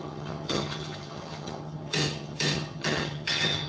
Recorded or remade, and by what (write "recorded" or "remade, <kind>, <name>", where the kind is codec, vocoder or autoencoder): remade, vocoder, HiFi-GAN